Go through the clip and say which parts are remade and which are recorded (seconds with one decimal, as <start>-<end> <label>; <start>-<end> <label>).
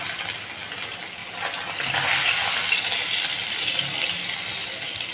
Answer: 0.0-5.1 recorded